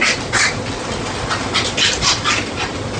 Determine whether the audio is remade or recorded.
recorded